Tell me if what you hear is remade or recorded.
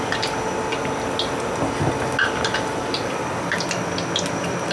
recorded